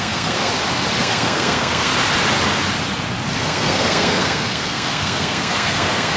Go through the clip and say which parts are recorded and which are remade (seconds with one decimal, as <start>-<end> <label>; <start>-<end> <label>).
0.0-0.5 remade; 0.5-1.0 recorded; 1.0-1.9 remade; 1.9-3.4 recorded; 3.4-6.2 remade